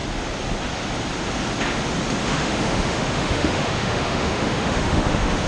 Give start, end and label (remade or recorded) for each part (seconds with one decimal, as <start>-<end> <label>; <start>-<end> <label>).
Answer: 0.0-2.2 recorded; 2.2-5.5 remade